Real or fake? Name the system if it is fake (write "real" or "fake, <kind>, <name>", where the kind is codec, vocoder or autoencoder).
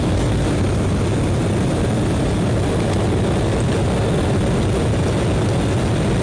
real